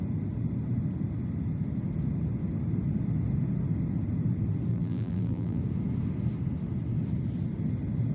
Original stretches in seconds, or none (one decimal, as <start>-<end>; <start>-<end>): 0.0-4.7; 5.6-8.1